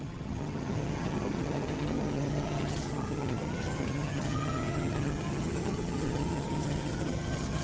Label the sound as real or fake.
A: fake